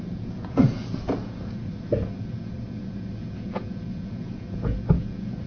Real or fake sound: fake